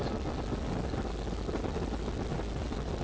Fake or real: real